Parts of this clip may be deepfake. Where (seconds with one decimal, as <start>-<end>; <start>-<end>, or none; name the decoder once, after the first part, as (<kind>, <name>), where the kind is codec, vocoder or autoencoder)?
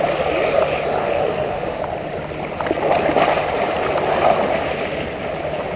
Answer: 1.0-1.8 (autoencoder, DAC-VAE)